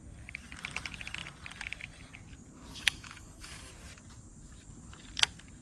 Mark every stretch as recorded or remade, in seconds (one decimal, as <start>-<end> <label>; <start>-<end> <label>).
0.0-2.7 recorded; 2.7-3.7 remade; 3.7-5.6 recorded